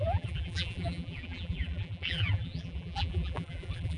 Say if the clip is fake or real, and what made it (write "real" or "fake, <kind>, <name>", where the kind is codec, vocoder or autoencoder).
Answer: fake, vocoder, BigVGAN v2